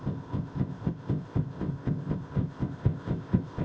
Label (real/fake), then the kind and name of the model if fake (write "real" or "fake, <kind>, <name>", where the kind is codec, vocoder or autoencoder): fake, codec, ZipCodec